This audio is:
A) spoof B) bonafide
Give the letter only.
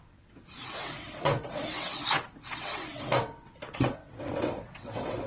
A